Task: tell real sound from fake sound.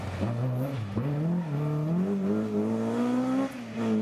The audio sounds real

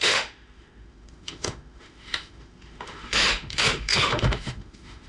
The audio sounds fake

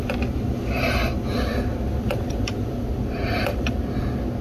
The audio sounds real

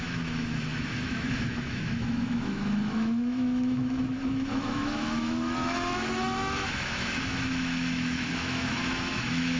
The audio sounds fake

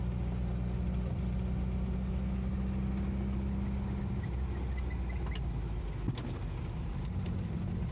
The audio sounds real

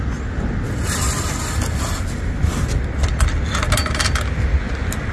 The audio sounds real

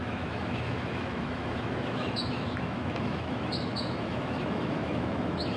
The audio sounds fake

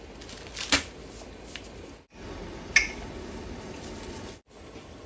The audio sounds real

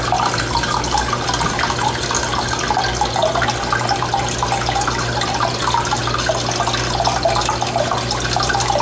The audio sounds real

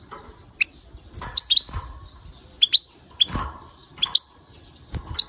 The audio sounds real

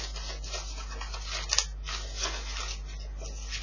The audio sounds real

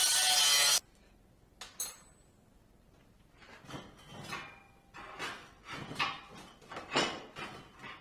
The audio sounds real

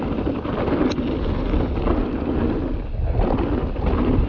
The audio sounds real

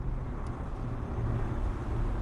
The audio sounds real